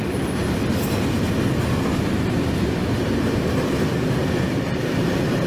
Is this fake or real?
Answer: real